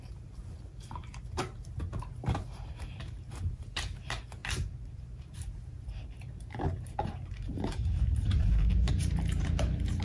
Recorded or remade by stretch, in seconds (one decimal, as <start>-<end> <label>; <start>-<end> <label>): 0.0-1.4 remade; 1.4-1.9 recorded; 1.9-10.0 remade